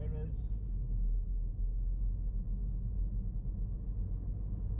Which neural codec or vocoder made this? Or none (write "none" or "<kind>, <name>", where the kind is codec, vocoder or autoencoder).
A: none